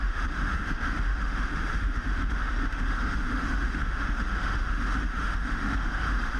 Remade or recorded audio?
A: remade